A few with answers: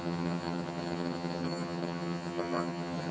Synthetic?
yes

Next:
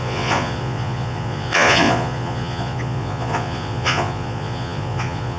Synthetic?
yes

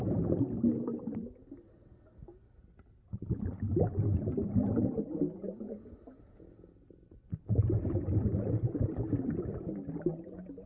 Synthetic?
no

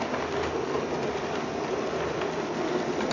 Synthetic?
no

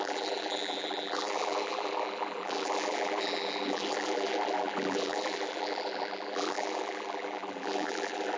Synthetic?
yes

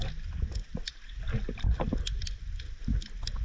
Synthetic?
no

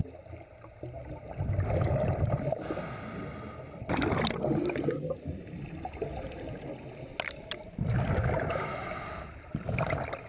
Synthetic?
no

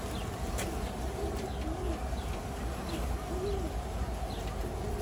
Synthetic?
no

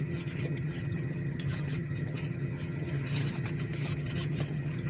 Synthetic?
yes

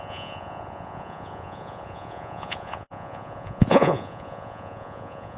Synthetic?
yes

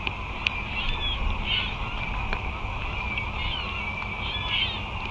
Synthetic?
no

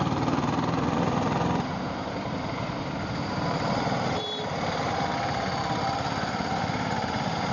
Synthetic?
yes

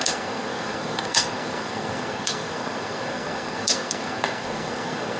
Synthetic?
yes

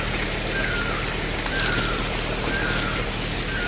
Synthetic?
no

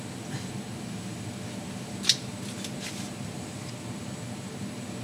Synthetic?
no